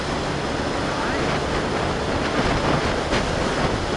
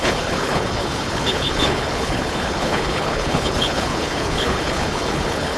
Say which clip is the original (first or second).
first